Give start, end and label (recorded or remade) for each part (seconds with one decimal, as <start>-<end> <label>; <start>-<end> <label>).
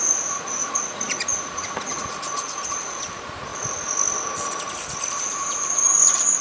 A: 0.0-3.5 remade; 3.5-5.2 recorded; 5.2-6.4 remade